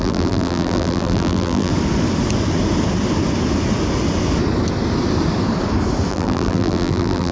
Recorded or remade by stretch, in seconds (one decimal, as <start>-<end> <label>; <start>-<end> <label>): 0.0-1.7 remade; 1.7-6.1 recorded; 6.1-7.3 remade